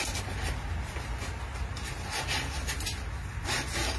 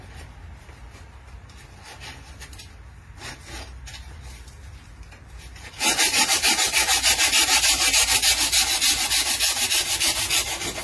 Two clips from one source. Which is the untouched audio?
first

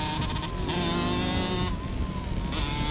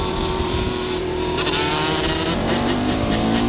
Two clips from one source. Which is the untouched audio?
first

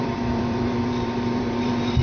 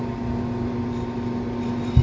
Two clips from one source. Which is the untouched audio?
second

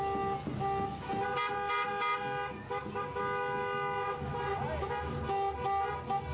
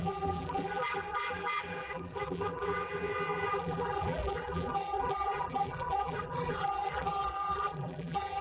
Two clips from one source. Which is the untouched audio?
first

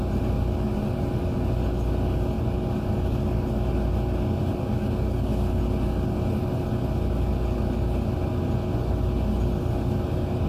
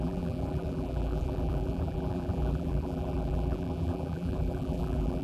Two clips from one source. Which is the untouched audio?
first